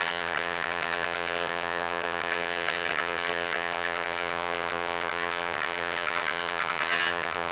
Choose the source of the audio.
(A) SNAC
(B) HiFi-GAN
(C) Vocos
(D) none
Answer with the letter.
B